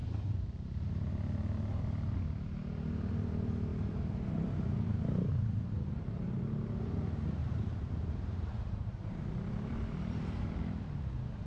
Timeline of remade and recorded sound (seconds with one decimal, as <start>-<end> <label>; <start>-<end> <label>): 0.0-1.1 remade; 1.1-3.7 recorded; 3.7-6.3 remade; 6.3-7.4 recorded; 7.4-10.8 remade; 10.8-11.5 recorded